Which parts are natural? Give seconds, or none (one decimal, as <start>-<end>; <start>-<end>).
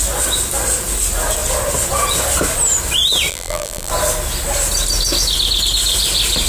0.0-3.3; 3.9-6.5